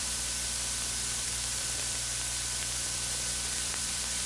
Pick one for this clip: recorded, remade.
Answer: remade